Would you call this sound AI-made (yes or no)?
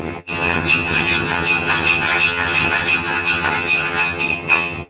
yes